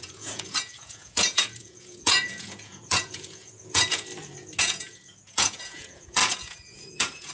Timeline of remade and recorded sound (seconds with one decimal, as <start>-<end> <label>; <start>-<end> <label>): 0.0-4.1 remade; 4.1-4.6 recorded; 4.6-7.3 remade